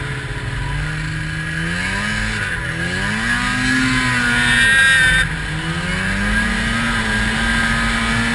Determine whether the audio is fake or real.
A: real